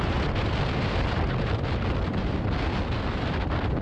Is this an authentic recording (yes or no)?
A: yes